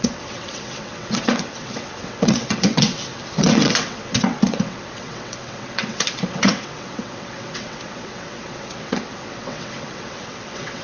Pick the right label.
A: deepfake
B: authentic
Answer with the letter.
A